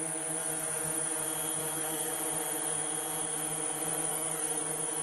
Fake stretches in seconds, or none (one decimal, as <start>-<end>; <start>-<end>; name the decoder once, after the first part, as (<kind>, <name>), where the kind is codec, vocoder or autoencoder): 1.6-2.1 (codec, SNAC); 4.1-4.6